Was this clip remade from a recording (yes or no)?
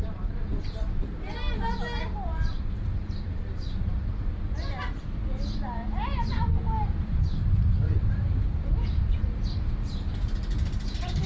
yes